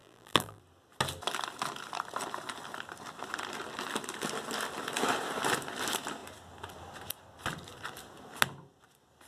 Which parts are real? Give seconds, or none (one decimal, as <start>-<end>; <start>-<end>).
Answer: 0.6-9.3